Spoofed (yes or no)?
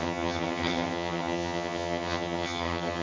yes